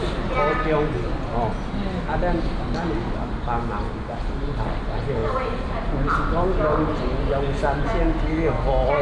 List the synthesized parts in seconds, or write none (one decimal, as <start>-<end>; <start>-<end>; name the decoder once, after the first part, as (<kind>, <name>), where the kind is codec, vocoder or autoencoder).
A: none